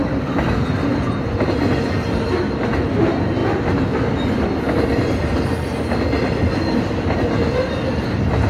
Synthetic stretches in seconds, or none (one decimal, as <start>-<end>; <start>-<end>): none